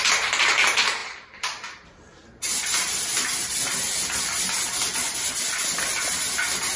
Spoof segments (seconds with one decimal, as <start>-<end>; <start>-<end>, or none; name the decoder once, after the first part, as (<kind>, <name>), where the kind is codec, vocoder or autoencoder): none